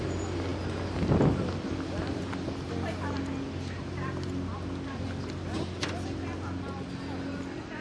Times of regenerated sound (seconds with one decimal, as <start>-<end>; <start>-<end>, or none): none